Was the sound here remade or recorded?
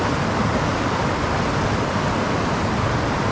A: recorded